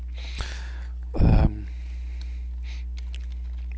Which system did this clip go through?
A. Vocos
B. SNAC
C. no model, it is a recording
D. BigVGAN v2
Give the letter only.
C